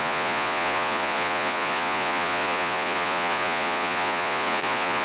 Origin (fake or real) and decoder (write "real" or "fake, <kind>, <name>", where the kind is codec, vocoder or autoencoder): fake, vocoder, Vocos